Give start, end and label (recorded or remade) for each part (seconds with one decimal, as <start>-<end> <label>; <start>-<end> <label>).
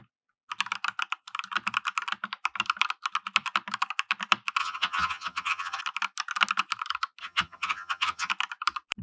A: 0.0-4.6 recorded; 4.6-5.8 remade; 5.8-7.2 recorded; 7.2-8.3 remade; 8.3-9.0 recorded